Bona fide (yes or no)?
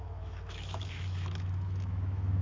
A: no